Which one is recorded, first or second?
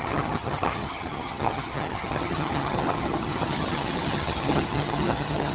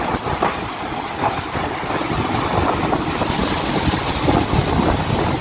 second